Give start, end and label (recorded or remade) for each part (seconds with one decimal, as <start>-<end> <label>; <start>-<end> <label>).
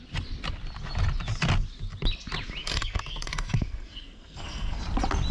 0.0-2.6 recorded; 2.6-4.8 remade; 4.8-5.3 recorded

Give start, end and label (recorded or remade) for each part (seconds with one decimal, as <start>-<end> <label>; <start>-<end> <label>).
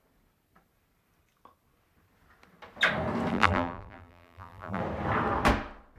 0.0-3.3 recorded; 3.3-4.8 remade; 4.8-6.0 recorded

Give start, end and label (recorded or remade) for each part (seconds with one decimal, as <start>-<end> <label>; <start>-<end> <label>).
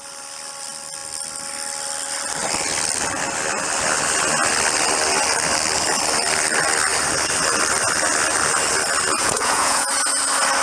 0.0-9.2 recorded; 9.2-9.9 remade; 9.9-10.6 recorded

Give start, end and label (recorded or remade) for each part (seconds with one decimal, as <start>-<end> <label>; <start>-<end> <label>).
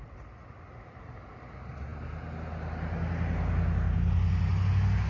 0.0-5.1 recorded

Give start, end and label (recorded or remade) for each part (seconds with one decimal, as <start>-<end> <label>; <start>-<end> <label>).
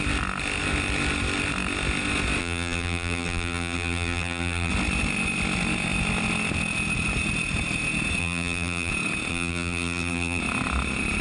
0.0-2.4 recorded; 2.4-4.7 remade; 4.7-8.2 recorded; 8.2-8.9 remade; 8.9-9.3 recorded; 9.3-10.4 remade; 10.4-11.2 recorded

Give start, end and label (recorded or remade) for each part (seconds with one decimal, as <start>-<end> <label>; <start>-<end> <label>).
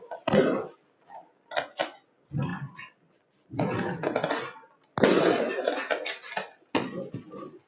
0.0-7.7 recorded